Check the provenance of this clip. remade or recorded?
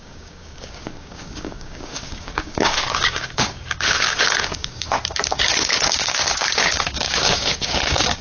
remade